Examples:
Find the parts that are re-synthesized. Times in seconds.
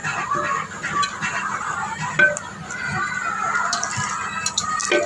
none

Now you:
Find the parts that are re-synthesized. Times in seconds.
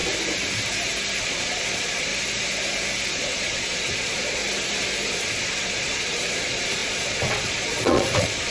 1.2-2.1 (vocoder, Vocos); 3.1-4.4; 5.1-8.5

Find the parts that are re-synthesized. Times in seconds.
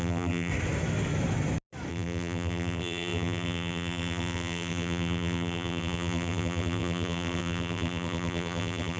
0.0-0.5 (vocoder, BigVGAN v2); 1.9-9.0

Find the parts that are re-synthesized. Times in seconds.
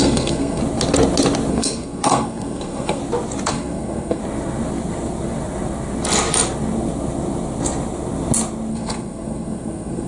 0.0-0.6 (codec, SNAC); 1.5-3.0; 3.5-4.2; 8.7-10.1